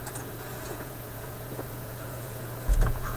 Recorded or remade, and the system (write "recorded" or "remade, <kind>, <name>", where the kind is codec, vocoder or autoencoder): remade, vocoder, Vocos